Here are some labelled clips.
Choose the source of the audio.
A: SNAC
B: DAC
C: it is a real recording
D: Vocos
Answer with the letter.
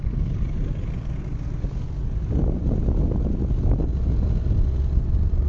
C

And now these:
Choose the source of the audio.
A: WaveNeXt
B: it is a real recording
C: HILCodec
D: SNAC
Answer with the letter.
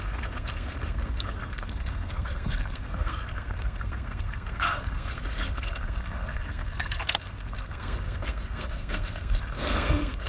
D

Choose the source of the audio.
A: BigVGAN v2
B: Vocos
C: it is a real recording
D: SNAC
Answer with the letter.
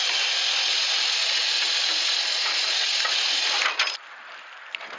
C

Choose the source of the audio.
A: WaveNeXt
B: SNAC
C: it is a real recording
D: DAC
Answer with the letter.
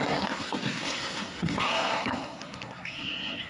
B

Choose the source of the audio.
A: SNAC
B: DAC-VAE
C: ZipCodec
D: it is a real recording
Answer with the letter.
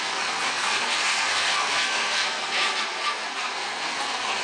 A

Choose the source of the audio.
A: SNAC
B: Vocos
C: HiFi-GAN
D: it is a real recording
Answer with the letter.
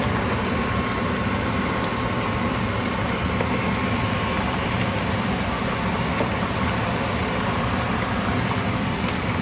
D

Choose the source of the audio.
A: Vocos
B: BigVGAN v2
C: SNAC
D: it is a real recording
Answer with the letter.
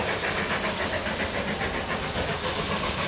D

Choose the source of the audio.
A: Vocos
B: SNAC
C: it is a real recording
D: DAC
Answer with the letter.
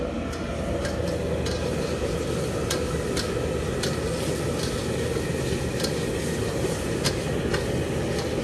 C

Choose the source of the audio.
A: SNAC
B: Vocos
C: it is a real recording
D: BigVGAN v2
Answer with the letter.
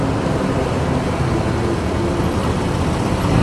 C